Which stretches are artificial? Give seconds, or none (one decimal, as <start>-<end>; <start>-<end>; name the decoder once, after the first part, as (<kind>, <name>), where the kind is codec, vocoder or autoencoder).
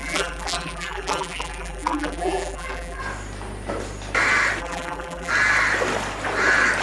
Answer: 0.0-3.0 (vocoder, BigVGAN v2); 4.6-5.3